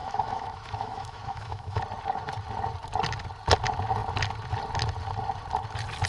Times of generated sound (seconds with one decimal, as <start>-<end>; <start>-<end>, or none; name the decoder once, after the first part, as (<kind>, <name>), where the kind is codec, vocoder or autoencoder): 0.0-1.8 (autoencoder, DAC-VAE)